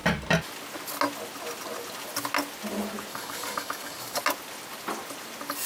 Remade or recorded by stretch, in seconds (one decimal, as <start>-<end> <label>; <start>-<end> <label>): 0.0-3.1 recorded; 3.1-4.2 remade; 4.2-5.7 recorded